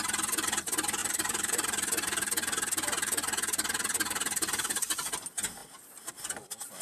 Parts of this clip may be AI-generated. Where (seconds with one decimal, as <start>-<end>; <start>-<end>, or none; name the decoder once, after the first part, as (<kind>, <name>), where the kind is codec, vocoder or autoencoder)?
1.0-5.1 (vocoder, BigVGAN v2)

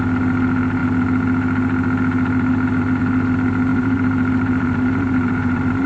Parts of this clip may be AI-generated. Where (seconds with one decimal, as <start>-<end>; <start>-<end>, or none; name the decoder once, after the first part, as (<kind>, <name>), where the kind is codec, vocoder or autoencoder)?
3.7-5.9 (vocoder, BigVGAN v2)

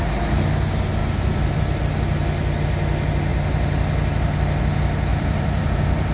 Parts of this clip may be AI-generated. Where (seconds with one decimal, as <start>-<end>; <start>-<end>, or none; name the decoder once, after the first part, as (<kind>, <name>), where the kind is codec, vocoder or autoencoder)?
1.0-1.8 (vocoder, BigVGAN v2); 5.1-6.1

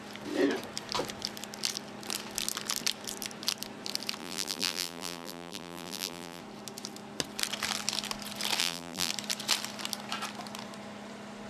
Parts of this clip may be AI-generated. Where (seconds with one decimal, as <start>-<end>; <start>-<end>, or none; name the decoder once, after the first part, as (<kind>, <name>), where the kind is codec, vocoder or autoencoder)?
4.2-6.4 (vocoder, BigVGAN v2); 8.6-9.1

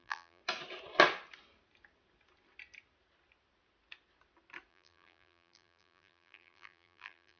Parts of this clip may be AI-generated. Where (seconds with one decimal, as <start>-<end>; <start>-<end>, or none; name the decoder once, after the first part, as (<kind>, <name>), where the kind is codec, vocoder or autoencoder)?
0.0-0.4 (vocoder, BigVGAN v2); 4.7-7.4

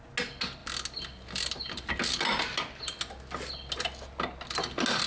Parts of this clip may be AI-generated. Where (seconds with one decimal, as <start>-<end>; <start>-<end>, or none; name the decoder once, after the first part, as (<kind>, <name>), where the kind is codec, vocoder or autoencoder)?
none